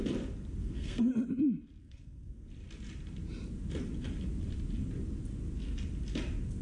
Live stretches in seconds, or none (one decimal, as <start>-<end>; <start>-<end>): 0.0-0.6; 1.1-1.8; 2.5-6.6